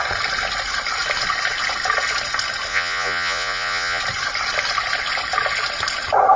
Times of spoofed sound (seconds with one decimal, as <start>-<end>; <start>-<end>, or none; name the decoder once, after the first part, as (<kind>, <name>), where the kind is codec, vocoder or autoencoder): 2.7-4.0 (vocoder, Vocos)